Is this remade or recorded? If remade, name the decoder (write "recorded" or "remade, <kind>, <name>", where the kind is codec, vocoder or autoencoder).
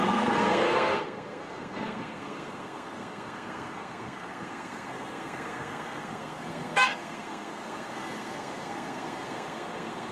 remade, codec, SNAC